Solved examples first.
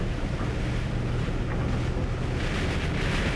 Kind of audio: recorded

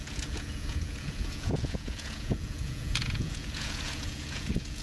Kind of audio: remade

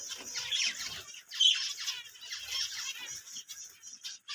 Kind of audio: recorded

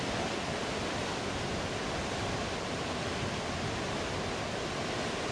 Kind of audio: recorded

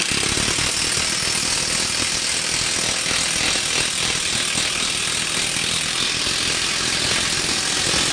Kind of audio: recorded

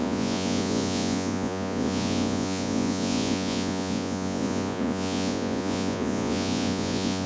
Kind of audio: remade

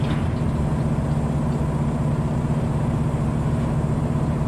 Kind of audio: recorded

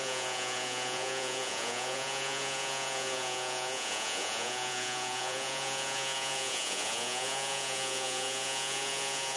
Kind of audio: remade